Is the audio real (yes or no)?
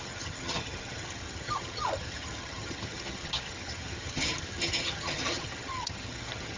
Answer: no